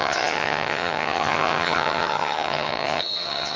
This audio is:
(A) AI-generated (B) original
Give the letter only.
A